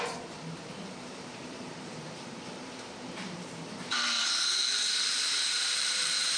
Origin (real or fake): fake